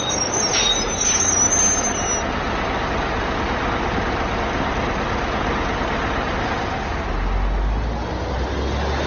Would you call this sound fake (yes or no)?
no